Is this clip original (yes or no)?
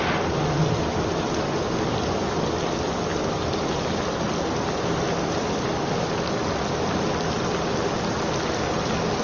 yes